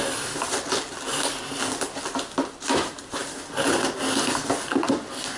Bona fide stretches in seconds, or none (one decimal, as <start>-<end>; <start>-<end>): 0.0-5.4